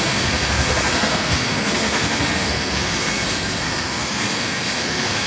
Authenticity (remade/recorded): remade